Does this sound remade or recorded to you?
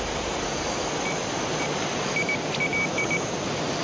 recorded